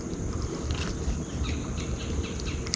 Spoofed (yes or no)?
no